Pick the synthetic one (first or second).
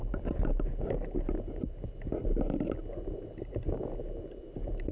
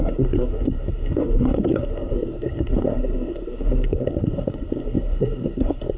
second